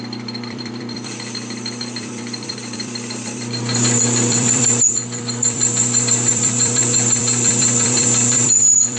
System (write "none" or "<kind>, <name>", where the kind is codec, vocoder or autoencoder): vocoder, BigVGAN v2